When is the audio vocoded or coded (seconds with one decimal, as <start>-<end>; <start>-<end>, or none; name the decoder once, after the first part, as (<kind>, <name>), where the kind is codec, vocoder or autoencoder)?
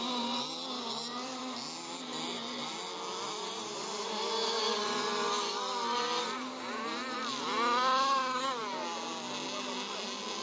none